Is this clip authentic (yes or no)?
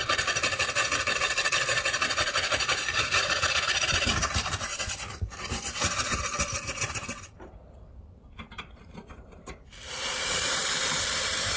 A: yes